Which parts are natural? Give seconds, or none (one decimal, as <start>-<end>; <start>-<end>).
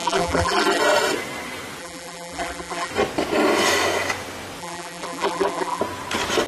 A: 0.8-1.8; 2.9-4.6; 5.8-6.5